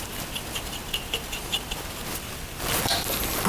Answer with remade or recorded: recorded